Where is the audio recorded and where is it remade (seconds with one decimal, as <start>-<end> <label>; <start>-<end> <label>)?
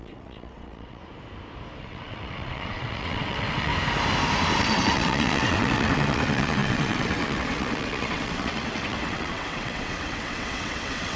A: 0.0-1.0 remade; 1.0-1.8 recorded; 1.8-3.7 remade; 3.7-4.6 recorded; 4.6-11.2 remade